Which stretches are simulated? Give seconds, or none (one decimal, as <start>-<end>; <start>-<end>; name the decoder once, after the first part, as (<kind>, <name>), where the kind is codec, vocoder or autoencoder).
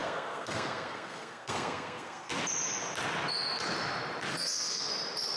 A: 0.0-2.3 (codec, SNAC); 4.3-4.9